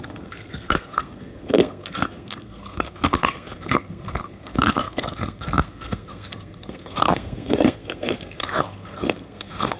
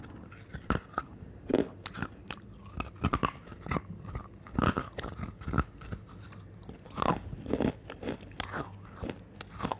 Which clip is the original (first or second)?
second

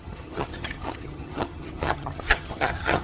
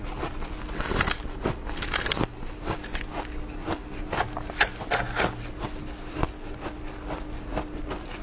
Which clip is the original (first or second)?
second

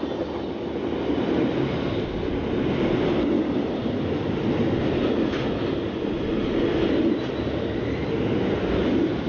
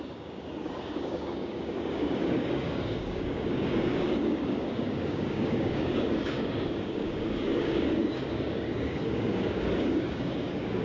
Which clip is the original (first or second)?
first